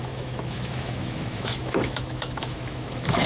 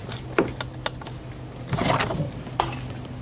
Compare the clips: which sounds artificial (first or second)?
first